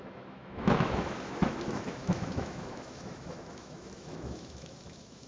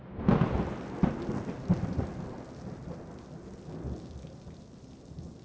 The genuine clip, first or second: second